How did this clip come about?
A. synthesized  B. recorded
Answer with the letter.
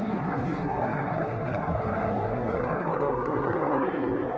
A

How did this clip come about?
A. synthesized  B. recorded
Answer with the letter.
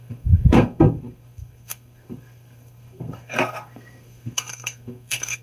A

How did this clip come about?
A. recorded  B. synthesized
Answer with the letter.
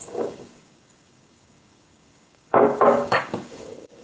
B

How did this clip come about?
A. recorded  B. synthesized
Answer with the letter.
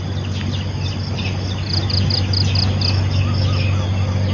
A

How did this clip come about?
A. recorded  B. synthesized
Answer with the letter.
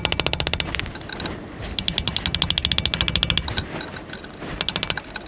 A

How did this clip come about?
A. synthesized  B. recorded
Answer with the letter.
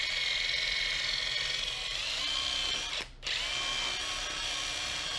B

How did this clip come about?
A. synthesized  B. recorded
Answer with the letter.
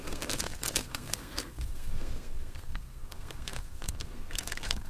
A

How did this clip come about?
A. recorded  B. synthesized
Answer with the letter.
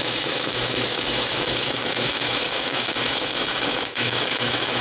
B